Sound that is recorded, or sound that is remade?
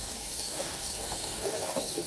remade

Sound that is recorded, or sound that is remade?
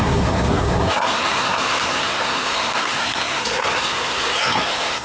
remade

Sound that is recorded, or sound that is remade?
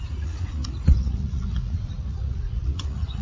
remade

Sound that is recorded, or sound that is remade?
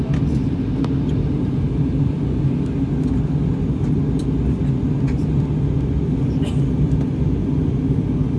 recorded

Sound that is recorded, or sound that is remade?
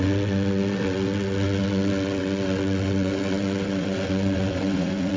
remade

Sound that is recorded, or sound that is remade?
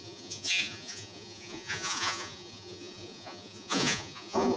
remade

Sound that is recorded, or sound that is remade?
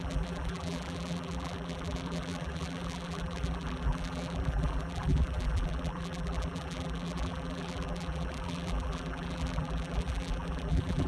remade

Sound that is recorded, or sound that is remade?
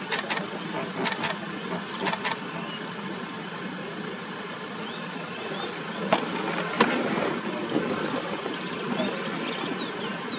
recorded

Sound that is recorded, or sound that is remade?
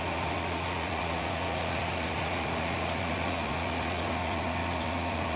remade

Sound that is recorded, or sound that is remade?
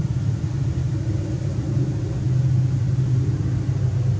recorded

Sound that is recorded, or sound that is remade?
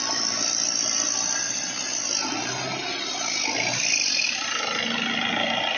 recorded